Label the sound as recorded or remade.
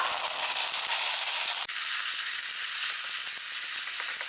recorded